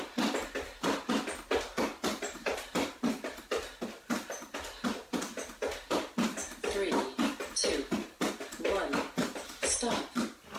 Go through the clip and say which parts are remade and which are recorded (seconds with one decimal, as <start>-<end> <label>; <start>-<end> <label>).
0.0-10.6 recorded